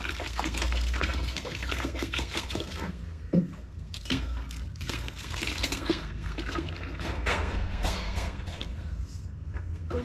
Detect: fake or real fake